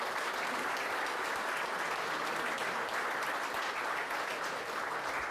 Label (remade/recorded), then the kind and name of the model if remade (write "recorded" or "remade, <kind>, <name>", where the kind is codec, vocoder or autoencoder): recorded